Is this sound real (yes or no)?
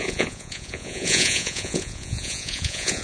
no